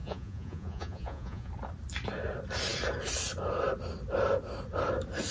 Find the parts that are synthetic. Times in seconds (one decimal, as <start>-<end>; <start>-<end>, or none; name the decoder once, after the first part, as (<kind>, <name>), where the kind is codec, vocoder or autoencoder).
0.0-1.5 (vocoder, Vocos)